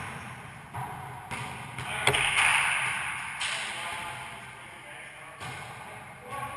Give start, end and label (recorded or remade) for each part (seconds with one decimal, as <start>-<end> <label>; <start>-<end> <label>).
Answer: 0.0-6.6 recorded